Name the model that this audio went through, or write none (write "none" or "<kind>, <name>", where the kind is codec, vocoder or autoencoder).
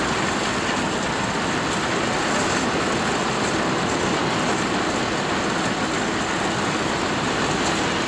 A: none